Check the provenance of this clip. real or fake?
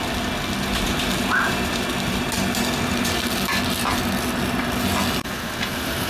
real